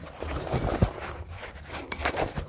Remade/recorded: recorded